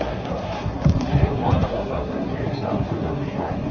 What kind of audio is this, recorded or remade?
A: remade